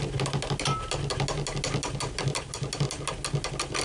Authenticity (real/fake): real